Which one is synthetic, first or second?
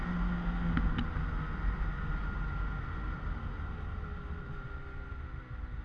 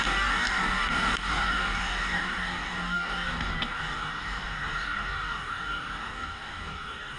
second